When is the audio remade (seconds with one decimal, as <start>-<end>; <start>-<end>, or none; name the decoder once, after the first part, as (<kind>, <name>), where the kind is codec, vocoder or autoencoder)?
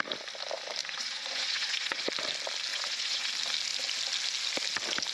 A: 0.8-2.1 (vocoder, Vocos); 2.7-3.3